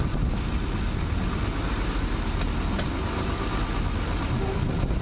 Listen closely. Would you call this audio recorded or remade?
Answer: recorded